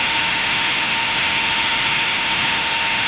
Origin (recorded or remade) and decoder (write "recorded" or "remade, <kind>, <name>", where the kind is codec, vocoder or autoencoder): remade, autoencoder, DAC-VAE